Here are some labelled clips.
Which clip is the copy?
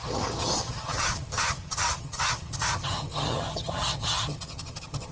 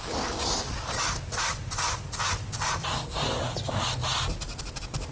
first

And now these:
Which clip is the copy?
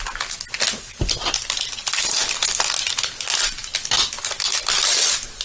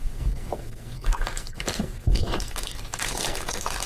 second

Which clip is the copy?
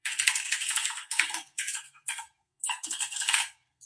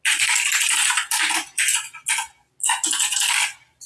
first